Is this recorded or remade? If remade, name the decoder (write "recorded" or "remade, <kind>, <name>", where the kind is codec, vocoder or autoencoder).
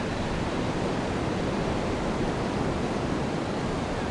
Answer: recorded